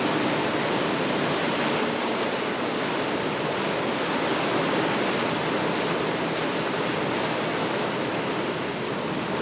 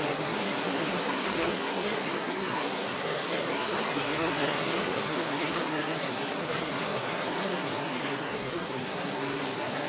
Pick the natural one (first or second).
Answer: first